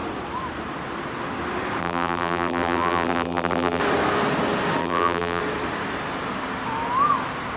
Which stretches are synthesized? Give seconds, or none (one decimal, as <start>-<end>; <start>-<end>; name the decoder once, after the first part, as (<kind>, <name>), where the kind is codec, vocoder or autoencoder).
1.8-3.8 (vocoder, BigVGAN v2); 4.8-5.4